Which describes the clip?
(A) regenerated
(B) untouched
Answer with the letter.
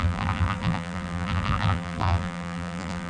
A